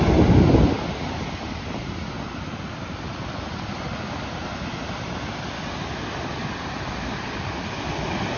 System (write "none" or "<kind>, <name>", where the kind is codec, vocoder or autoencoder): none